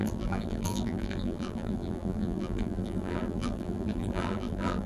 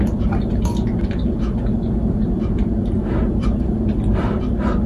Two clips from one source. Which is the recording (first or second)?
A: second